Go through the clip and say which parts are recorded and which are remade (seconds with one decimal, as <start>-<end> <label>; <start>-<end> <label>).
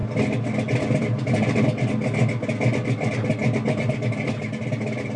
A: 0.0-5.2 recorded